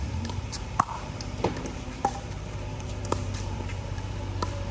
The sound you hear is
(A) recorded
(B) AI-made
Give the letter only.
B